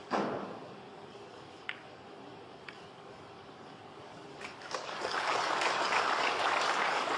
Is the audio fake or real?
fake